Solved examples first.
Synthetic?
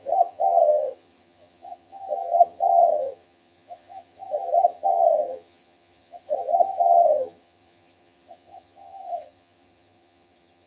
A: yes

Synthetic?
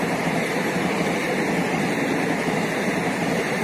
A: no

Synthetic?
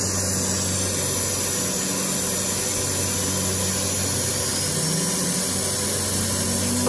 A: no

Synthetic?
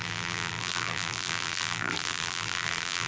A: yes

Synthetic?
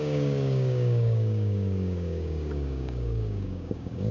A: yes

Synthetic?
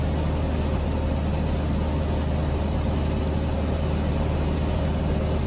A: no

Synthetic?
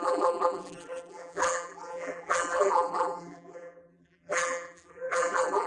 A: yes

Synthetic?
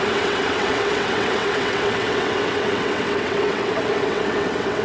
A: yes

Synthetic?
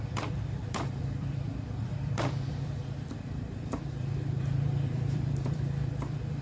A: yes